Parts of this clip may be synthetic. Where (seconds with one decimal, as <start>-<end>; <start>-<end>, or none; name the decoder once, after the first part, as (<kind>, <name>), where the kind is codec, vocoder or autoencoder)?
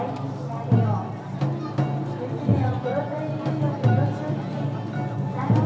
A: 2.5-3.2 (vocoder, Vocos)